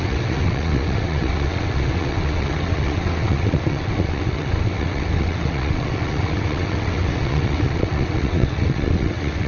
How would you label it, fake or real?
fake